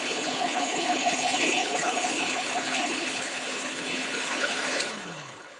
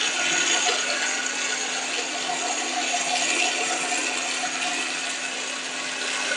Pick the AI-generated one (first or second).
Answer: first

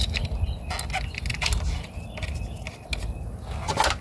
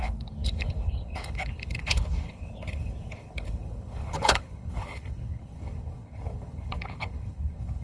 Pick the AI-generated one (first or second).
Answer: second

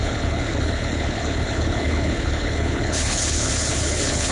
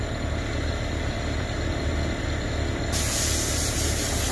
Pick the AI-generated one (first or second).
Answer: first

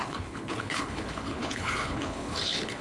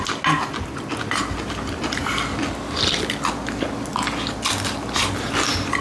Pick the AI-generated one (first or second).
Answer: first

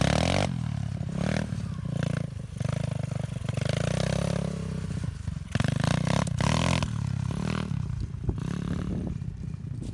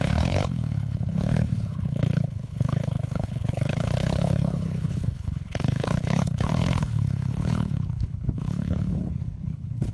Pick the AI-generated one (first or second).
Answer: second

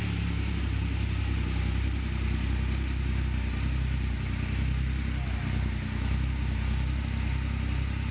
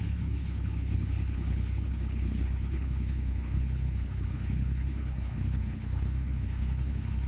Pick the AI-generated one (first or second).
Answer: second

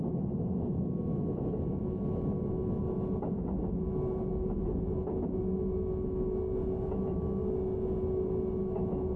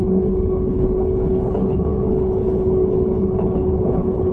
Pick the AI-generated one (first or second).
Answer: second